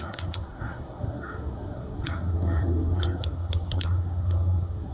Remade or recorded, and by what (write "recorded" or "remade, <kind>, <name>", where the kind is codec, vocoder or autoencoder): remade, codec, SNAC